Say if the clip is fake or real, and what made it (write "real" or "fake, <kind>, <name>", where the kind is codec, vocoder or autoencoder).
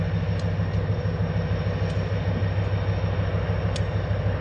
real